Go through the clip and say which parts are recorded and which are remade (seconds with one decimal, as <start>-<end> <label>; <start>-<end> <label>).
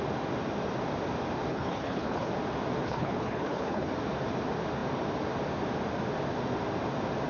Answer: 0.0-1.5 recorded; 1.5-2.3 remade; 2.3-2.8 recorded; 2.8-3.9 remade; 3.9-7.3 recorded